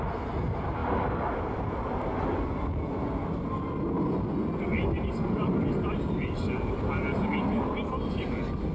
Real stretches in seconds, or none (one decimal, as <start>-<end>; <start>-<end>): 0.0-8.7